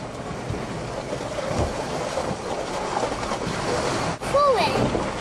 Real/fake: real